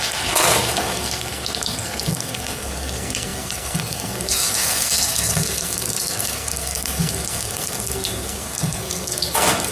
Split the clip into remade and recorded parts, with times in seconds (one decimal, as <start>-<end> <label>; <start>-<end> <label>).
0.0-9.7 remade